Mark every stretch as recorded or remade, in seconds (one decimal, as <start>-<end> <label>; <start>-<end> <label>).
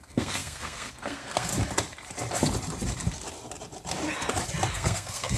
0.0-1.5 remade; 1.5-4.7 recorded; 4.7-5.4 remade